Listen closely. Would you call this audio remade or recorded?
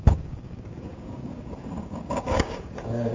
remade